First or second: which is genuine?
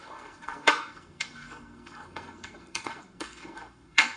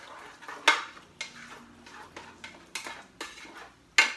second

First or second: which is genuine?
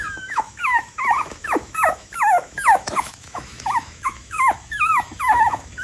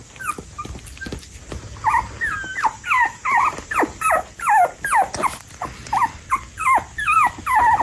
second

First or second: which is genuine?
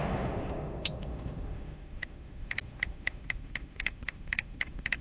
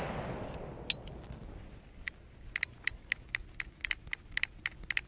second